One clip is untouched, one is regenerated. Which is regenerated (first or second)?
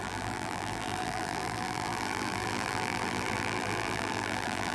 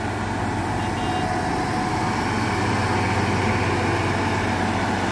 first